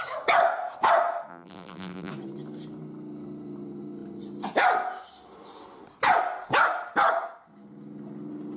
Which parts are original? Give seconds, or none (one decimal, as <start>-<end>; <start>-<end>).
0.0-1.3; 2.1-8.6